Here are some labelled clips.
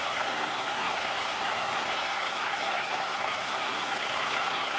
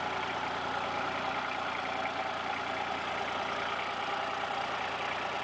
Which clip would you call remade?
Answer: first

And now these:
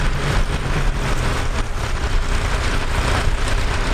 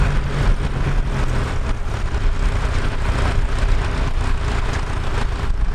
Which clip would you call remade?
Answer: first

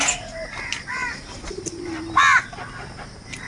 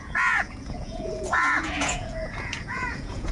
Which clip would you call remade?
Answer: second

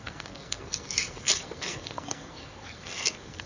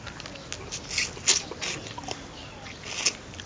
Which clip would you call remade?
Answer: first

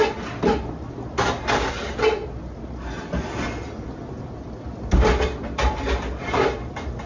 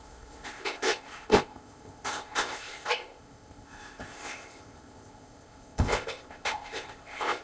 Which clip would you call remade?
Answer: second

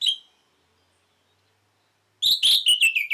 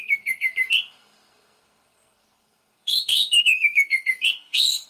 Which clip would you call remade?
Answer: second